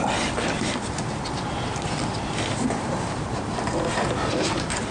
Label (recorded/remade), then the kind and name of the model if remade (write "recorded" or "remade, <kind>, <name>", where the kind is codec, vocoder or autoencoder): remade, vocoder, BigVGAN v2